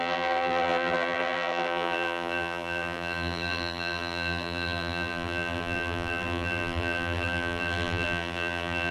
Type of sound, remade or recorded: remade